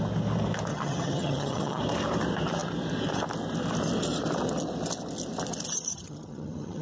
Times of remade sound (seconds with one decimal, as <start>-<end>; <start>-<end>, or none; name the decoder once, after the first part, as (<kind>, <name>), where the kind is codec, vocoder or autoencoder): 0.7-1.8 (vocoder, HiFi-GAN); 5.9-6.8